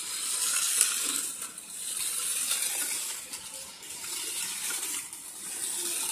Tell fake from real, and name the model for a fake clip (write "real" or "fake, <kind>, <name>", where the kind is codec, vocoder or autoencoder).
real